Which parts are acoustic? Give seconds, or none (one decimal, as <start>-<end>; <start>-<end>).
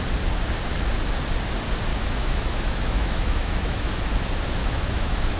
0.0-1.9; 3.9-4.6